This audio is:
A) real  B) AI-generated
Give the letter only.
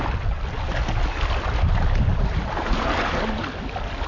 A